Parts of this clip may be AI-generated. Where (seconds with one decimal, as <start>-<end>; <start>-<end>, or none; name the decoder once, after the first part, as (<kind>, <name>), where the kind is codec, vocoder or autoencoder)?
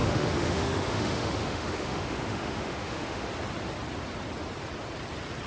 0.0-3.3 (autoencoder, DAC-VAE)